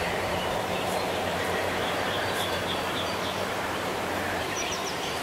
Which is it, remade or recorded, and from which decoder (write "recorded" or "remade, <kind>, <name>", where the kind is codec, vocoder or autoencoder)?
remade, vocoder, BigVGAN v2